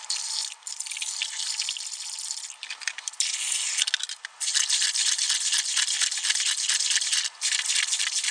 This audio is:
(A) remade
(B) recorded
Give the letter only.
B